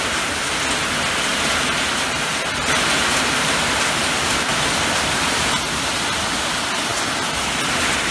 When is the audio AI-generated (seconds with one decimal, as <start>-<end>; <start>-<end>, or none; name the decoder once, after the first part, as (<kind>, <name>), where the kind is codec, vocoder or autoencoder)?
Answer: none